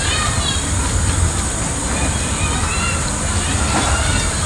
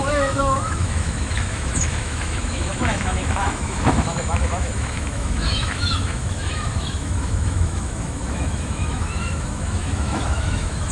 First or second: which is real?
first